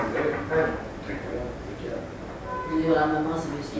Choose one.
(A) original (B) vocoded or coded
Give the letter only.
A